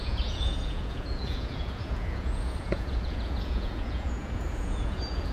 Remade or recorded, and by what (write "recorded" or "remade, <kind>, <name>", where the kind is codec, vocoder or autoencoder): remade, vocoder, Vocos